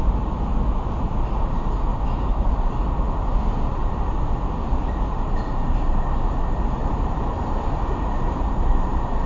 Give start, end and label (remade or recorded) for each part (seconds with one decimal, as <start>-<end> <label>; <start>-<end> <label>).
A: 0.0-0.5 recorded; 0.5-1.1 remade; 1.1-1.9 recorded; 1.9-2.5 remade; 2.5-3.8 recorded; 3.8-5.4 remade; 5.4-6.8 recorded; 6.8-7.9 remade; 7.9-9.3 recorded